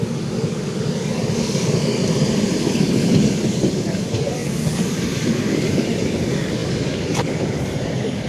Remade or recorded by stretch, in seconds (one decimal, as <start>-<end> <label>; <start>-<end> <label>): 0.0-2.0 remade; 2.0-2.6 recorded; 2.6-8.3 remade